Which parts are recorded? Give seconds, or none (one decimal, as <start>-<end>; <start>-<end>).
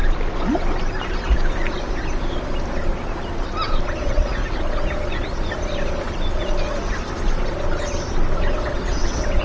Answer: 0.0-4.0; 4.4-8.4